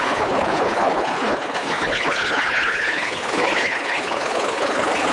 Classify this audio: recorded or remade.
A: remade